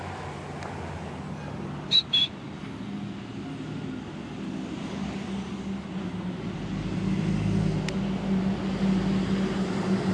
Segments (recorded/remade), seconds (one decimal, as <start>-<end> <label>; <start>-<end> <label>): 0.0-10.1 recorded